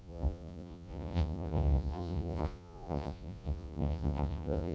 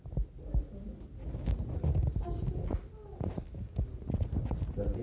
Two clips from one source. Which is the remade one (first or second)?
first